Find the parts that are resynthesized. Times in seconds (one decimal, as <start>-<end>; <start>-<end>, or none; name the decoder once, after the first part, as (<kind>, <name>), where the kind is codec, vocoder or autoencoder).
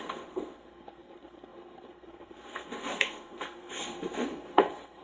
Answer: 0.0-5.0 (codec, SNAC)